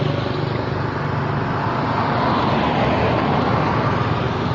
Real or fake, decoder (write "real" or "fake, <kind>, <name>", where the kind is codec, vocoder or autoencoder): real